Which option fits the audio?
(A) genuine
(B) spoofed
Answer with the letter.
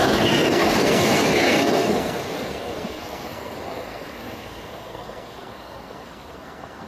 B